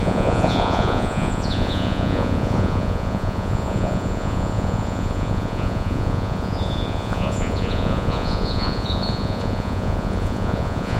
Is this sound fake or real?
fake